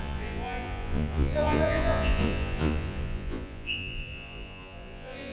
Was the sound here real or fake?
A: fake